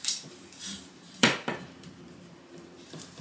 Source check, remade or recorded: remade